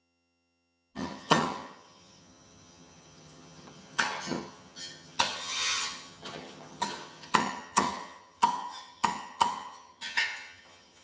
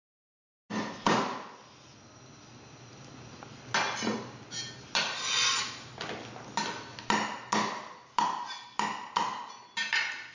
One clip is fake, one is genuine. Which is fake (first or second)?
first